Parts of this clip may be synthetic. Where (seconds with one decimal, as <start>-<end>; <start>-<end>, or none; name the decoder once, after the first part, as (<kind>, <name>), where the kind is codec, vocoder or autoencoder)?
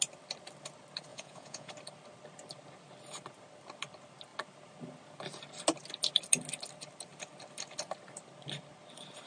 1.1-1.7 (vocoder, Vocos)